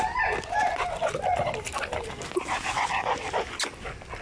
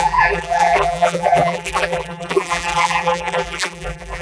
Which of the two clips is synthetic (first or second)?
second